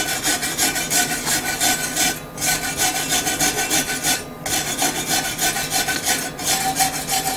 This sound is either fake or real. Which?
real